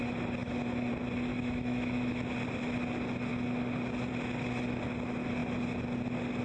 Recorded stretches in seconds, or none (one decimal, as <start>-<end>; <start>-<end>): 0.0-0.4; 0.9-1.3; 2.1-6.4